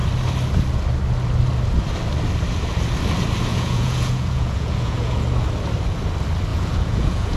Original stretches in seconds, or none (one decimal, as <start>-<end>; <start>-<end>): 0.0-3.5; 5.2-6.5